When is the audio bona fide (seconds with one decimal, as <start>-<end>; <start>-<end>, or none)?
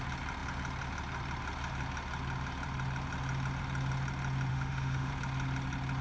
0.0-4.5; 5.1-6.0